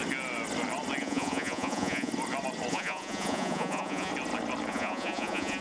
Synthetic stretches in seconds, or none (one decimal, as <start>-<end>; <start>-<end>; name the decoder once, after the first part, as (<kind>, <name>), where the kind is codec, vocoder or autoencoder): 1.0-2.1 (vocoder, Vocos); 2.7-4.1; 4.7-5.6